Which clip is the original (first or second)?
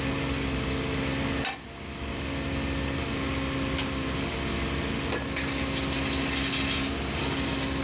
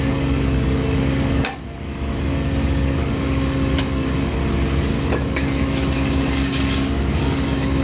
first